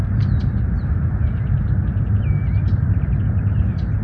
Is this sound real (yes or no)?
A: yes